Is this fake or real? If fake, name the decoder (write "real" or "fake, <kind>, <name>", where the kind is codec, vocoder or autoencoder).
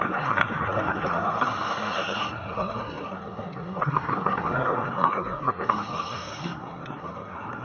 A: fake, codec, SNAC